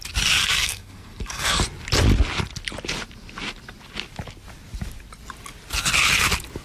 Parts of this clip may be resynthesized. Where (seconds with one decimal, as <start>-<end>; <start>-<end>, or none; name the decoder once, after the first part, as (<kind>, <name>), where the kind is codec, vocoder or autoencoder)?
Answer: 0.4-1.6 (codec, SNAC)